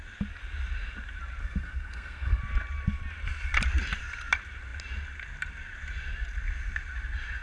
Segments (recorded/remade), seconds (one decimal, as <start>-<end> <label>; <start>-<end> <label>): 0.0-1.4 recorded; 1.4-2.4 remade; 2.4-7.4 recorded